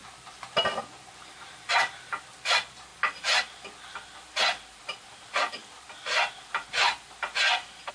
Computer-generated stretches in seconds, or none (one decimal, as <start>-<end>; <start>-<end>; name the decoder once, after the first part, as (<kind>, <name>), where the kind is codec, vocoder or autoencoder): none